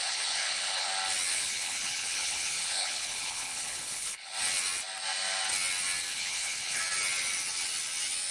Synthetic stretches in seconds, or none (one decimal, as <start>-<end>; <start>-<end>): 0.0-0.9; 1.3-4.3; 6.1-6.8